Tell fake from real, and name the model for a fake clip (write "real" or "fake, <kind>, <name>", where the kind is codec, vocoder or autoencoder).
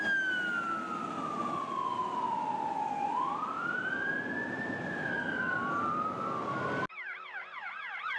real